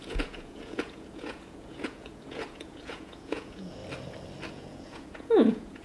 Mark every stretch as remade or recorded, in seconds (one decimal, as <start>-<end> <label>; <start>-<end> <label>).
0.0-3.8 remade; 3.8-4.5 recorded; 4.5-5.8 remade